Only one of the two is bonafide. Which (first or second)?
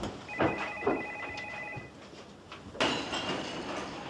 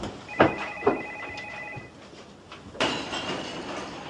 first